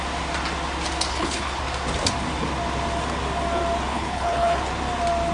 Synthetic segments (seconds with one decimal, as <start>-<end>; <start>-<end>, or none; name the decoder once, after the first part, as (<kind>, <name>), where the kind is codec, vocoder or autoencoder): 1.1-1.6 (codec, HILCodec); 3.9-4.6